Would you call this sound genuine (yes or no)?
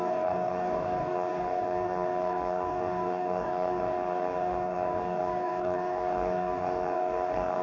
no